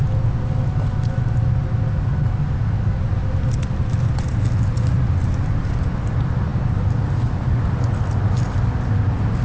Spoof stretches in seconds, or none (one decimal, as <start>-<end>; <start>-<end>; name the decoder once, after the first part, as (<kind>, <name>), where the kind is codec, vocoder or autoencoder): none